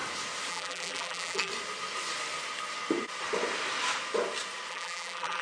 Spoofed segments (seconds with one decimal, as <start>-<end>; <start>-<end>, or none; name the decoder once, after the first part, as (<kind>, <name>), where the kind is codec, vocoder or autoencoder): 0.5-1.5 (vocoder, BigVGAN v2); 4.7-5.4